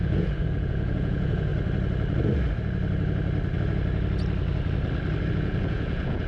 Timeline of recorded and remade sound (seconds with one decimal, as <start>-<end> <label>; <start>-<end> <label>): 0.0-1.5 remade; 1.5-5.3 recorded; 5.3-6.3 remade